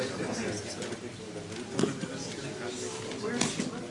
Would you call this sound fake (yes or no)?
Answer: no